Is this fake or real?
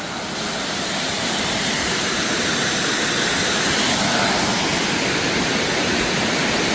real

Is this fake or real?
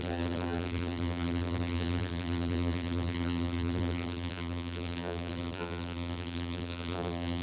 fake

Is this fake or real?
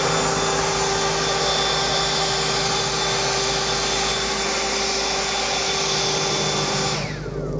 real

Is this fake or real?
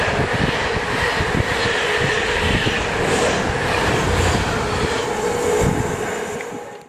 real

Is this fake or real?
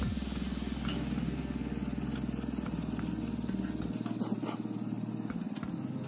real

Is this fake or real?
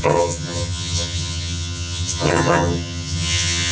fake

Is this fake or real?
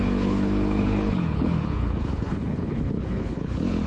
fake